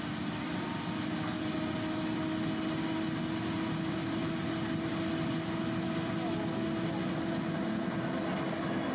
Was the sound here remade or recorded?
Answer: recorded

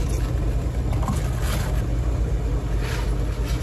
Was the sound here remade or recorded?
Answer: recorded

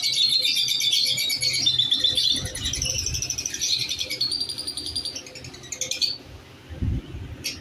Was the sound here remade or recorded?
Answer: recorded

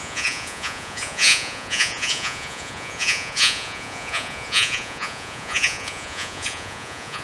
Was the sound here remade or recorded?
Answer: remade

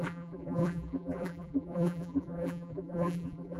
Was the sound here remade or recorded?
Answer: remade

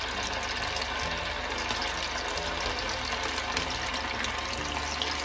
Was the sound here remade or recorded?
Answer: recorded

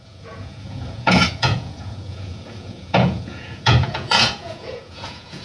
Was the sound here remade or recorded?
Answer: remade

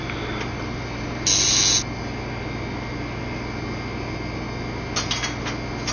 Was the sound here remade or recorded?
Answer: recorded